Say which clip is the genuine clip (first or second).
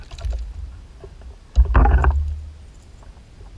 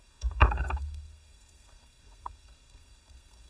first